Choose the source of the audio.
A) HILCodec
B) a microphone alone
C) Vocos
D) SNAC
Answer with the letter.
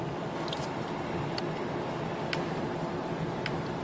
B